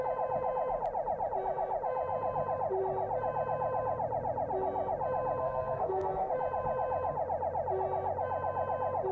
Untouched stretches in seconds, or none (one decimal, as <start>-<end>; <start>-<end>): 0.0-5.4; 6.3-9.1